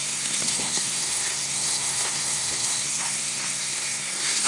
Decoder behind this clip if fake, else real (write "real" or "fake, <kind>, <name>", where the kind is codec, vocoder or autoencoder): fake, codec, SNAC